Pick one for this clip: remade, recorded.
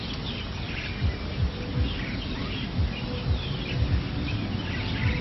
recorded